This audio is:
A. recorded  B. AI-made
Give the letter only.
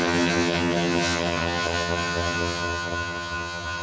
B